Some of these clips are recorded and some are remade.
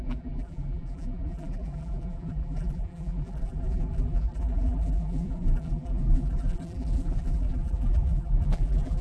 remade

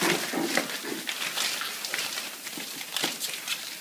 recorded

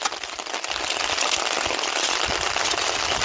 recorded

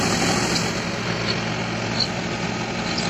recorded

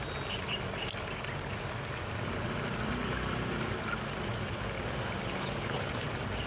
recorded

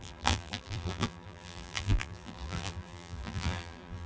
remade